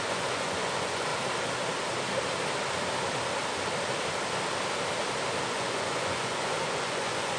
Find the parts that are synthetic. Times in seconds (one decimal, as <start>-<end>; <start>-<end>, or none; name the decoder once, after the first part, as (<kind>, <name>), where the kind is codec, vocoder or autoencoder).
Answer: 0.0-1.1 (vocoder, Vocos); 5.5-7.4